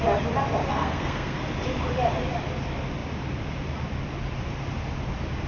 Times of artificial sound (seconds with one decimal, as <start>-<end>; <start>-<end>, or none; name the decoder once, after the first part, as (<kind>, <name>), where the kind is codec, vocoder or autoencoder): 0.7-1.4 (codec, SNAC)